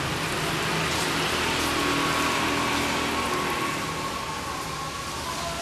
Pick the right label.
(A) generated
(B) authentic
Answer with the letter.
B